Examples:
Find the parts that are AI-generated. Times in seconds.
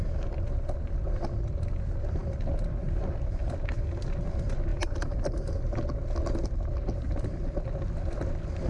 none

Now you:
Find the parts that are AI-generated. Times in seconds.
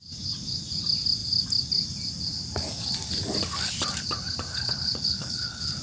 4.5-5.8 (codec, HILCodec)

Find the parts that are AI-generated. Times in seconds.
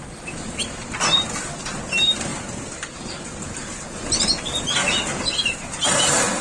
none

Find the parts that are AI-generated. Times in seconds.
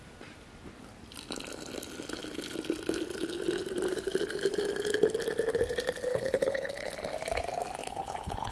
6.1-6.9 (codec, HILCodec); 7.8-8.5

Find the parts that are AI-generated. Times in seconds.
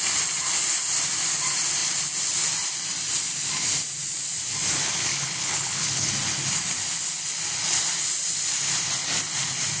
5.1-6.1 (codec, HILCodec)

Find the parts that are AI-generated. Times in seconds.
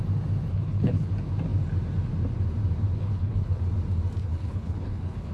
0.5-1.1 (codec, HILCodec); 3.0-3.6; 4.2-5.3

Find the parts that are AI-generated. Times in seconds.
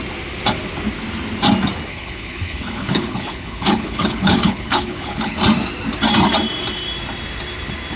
1.9-5.4 (codec, HILCodec)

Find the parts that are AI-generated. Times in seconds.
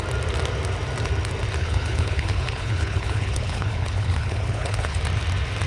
1.6-5.0 (codec, HILCodec)